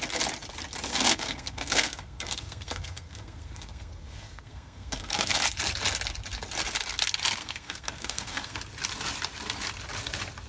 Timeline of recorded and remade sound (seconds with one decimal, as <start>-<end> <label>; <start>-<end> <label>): 0.0-0.9 recorded; 0.9-5.3 remade; 5.3-7.4 recorded; 7.4-8.6 remade; 8.6-10.5 recorded